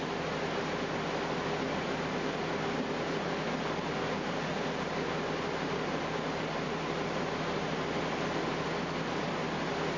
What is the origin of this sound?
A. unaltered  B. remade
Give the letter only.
A